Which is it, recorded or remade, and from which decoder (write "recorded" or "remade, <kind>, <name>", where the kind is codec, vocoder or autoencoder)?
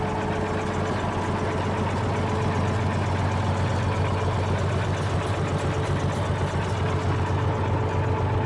recorded